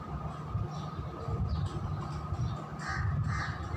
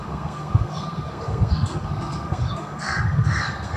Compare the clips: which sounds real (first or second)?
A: first